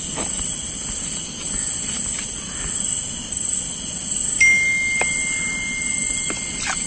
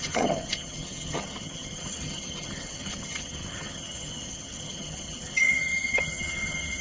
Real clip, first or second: first